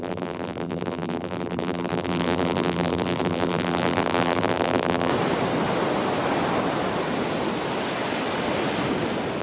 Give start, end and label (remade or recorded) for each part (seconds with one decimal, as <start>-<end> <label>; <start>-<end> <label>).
0.0-5.1 remade; 5.1-9.4 recorded